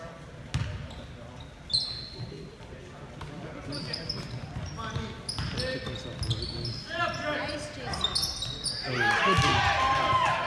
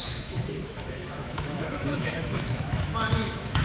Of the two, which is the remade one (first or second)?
second